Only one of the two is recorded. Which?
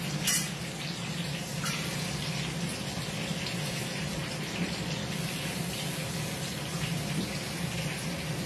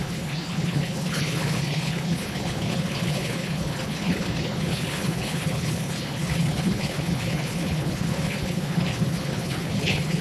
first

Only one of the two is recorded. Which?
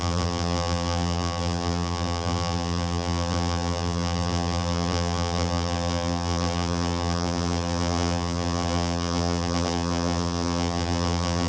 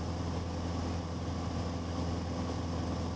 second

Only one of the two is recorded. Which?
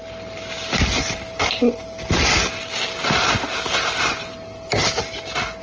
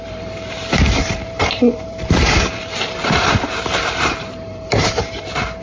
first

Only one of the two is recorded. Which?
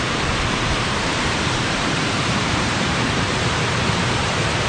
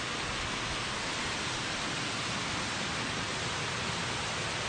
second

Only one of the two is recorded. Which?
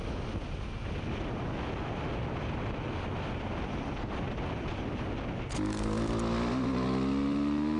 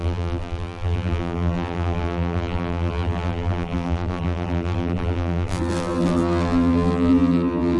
first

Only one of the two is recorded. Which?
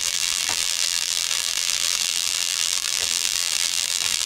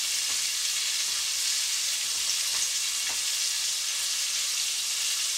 second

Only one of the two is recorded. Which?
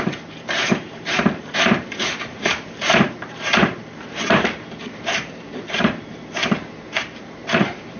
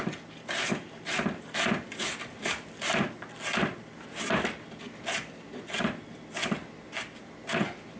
second